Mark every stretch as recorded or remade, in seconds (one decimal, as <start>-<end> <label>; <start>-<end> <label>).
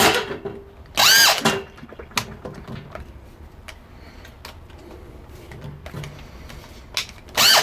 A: 0.0-7.6 recorded